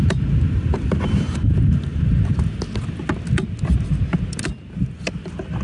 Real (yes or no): yes